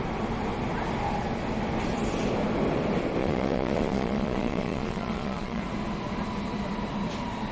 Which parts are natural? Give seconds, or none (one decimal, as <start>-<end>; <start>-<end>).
0.0-3.2; 5.6-7.5